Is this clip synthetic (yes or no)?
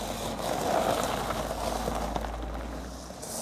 no